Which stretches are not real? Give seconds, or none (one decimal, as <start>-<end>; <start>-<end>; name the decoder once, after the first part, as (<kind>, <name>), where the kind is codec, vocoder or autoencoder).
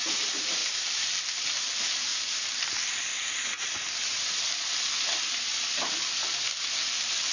0.0-3.1 (vocoder, BigVGAN v2); 6.6-7.3